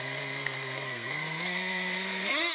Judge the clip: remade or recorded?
remade